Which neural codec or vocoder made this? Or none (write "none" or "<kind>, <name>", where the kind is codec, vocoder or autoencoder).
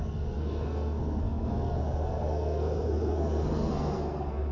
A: codec, SNAC